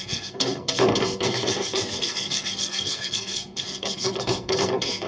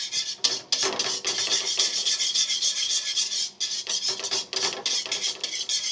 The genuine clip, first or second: second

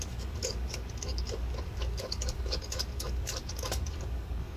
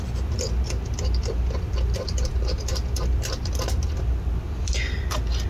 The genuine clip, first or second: second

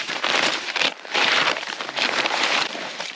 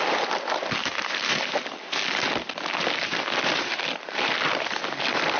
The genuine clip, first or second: second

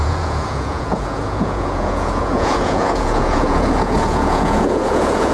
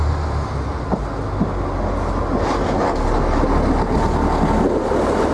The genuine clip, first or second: second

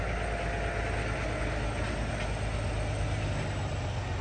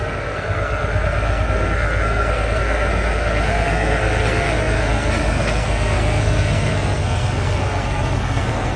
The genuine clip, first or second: first